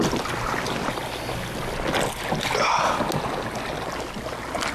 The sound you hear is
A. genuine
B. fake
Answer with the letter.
A